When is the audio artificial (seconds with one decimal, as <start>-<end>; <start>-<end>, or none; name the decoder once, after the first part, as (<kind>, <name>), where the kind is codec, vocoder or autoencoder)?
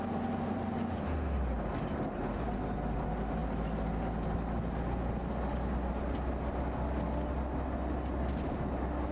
none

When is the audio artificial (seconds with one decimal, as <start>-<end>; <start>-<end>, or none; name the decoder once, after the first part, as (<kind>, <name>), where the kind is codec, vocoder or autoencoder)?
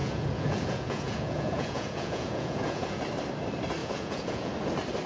0.0-3.0 (vocoder, Vocos); 3.8-4.5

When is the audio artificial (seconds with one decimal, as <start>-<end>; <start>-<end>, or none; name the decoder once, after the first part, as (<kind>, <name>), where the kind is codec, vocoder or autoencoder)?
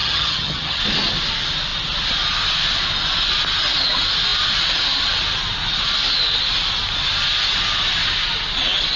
0.0-0.8 (vocoder, HiFi-GAN)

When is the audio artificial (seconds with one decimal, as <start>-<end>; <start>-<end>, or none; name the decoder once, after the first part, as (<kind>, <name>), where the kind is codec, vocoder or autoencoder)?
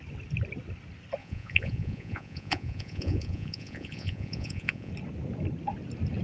1.2-4.9 (vocoder, Vocos)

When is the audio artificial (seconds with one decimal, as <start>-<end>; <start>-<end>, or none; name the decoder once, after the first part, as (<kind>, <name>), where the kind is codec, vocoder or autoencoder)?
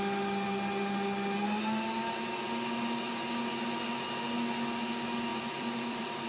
5.3-6.3 (vocoder, BigVGAN v2)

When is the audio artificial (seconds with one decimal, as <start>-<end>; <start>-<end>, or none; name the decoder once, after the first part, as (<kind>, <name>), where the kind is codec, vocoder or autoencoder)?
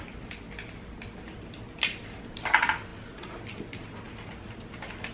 none